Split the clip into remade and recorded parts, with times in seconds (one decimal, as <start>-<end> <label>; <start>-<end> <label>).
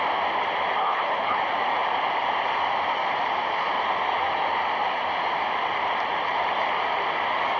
0.0-0.8 recorded; 0.8-1.4 remade; 1.4-7.6 recorded